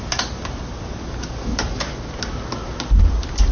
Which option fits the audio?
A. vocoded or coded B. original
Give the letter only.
B